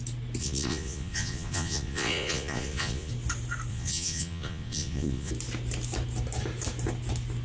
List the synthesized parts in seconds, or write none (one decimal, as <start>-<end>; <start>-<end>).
0.4-3.1; 3.7-5.3